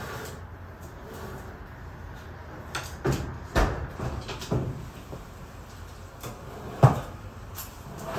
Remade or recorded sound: recorded